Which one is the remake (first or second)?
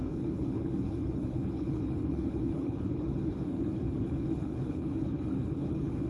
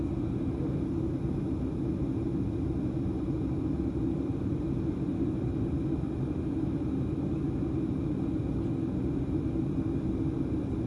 first